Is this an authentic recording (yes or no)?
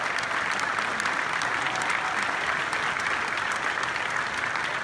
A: yes